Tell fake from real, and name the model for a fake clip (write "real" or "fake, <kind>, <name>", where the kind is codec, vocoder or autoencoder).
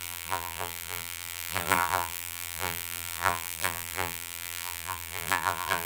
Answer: fake, vocoder, BigVGAN v2